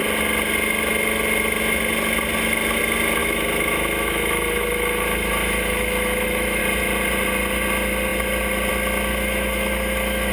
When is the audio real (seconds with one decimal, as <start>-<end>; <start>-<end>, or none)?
0.0-3.2; 6.6-9.1